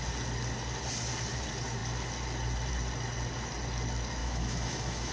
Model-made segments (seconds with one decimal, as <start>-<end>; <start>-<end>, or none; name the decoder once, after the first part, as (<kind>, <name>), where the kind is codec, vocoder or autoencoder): 4.2-5.1 (autoencoder, DAC-VAE)